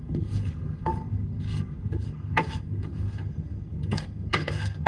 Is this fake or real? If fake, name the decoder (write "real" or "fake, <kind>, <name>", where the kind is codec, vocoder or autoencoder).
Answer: fake, codec, SNAC